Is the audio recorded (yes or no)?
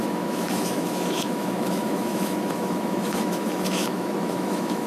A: no